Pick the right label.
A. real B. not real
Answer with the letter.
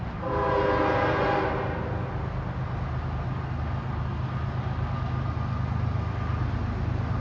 A